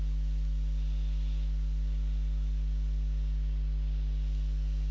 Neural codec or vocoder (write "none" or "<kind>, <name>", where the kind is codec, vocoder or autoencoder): none